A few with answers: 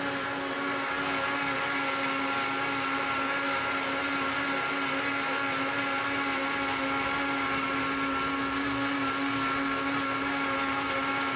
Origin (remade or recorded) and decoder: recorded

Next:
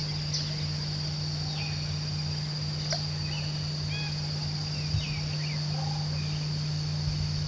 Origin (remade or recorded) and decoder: recorded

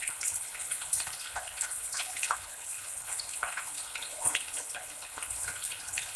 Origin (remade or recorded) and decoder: remade, codec, HILCodec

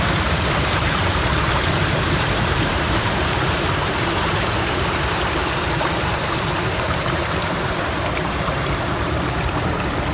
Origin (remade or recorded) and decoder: remade, vocoder, BigVGAN v2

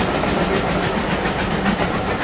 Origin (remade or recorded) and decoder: recorded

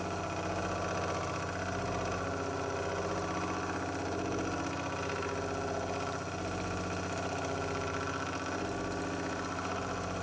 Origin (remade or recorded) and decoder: recorded